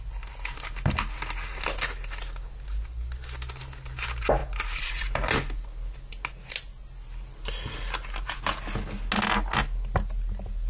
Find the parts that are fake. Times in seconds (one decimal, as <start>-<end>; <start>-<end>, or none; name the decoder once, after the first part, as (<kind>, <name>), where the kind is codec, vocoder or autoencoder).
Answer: none